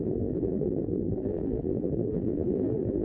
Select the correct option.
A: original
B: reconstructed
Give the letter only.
B